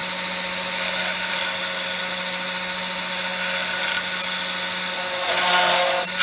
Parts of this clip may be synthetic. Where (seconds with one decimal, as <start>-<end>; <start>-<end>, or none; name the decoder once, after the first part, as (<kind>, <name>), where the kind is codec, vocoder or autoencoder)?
none